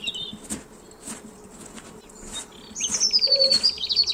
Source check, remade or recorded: recorded